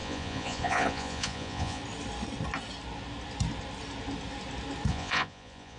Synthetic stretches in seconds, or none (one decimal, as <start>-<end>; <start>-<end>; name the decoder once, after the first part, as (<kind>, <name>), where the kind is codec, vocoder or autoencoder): 0.0-1.8 (vocoder, Vocos); 4.9-5.8